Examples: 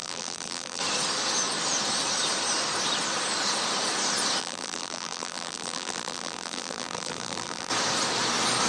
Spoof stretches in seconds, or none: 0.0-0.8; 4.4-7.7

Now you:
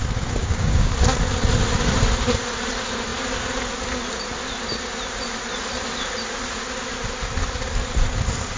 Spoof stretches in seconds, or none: 0.4-0.9

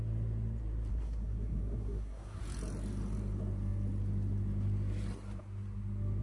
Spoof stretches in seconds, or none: 0.9-2.4

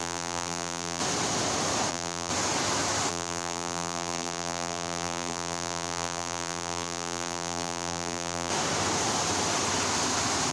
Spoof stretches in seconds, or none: 0.0-1.0; 1.9-2.3; 3.1-8.5

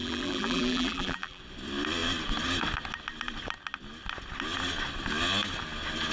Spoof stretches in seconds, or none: 0.0-1.4

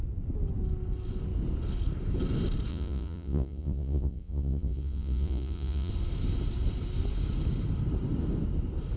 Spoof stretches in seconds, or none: 2.7-5.9

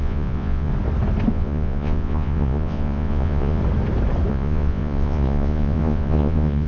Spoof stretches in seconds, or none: 0.0-0.7; 1.3-3.6; 4.3-6.7